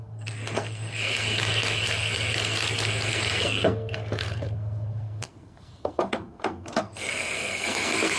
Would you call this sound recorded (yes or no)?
no